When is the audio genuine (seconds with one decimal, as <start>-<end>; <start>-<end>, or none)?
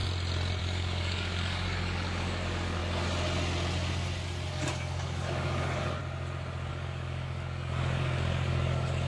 0.0-0.6; 2.8-4.5; 6.0-6.7